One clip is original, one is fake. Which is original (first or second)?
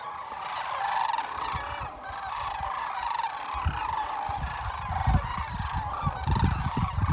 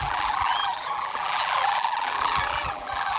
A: first